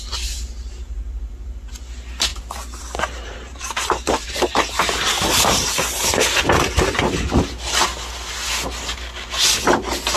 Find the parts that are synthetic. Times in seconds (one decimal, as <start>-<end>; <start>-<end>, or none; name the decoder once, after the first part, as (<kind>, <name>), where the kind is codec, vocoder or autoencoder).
2.3-6.4 (vocoder, BigVGAN v2)